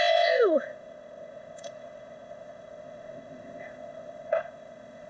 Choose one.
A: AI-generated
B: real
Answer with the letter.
A